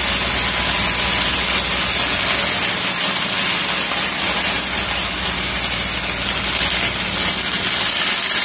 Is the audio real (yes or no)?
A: yes